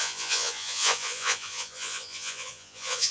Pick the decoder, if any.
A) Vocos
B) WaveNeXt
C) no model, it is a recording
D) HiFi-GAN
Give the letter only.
A